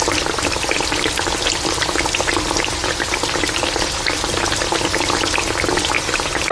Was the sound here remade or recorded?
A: recorded